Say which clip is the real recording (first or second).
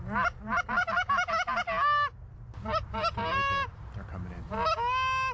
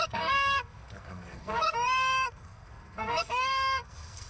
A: first